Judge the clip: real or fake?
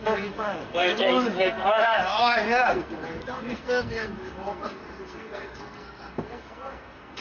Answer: fake